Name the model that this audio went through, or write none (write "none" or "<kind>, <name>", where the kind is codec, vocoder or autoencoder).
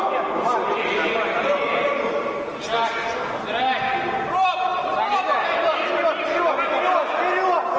none